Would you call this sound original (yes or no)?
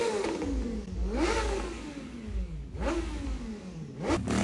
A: no